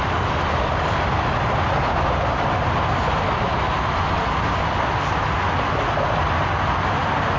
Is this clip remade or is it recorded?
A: recorded